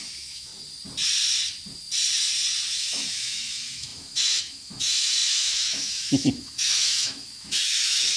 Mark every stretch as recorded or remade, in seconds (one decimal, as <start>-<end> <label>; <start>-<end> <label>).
0.0-0.5 remade; 0.5-2.7 recorded; 2.7-8.2 remade